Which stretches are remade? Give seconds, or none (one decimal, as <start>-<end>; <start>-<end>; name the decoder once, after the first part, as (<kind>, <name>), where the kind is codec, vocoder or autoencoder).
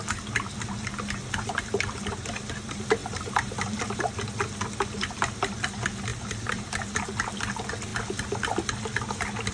3.0-4.0 (vocoder, BigVGAN v2); 6.1-6.8